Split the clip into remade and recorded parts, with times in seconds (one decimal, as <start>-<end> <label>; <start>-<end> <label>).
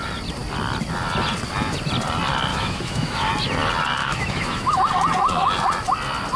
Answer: 0.0-2.5 recorded; 2.5-3.3 remade; 3.3-4.0 recorded; 4.0-4.8 remade; 4.8-6.4 recorded